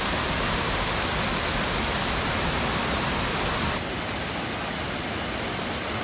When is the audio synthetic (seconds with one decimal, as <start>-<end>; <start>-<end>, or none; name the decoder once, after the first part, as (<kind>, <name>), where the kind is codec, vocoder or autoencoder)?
none